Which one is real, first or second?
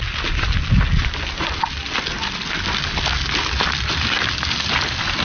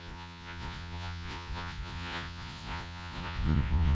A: first